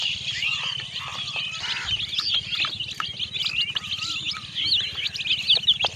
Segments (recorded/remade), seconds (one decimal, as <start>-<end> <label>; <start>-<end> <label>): 0.0-6.0 recorded